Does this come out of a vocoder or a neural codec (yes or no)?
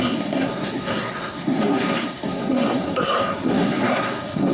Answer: yes